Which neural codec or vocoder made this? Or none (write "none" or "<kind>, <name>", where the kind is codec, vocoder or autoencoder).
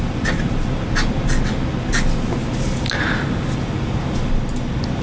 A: none